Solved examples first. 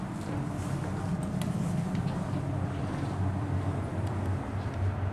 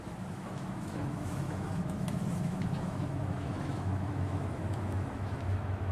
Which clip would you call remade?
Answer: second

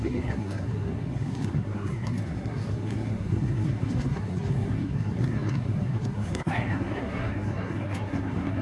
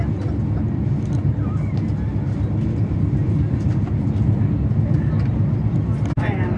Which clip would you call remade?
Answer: first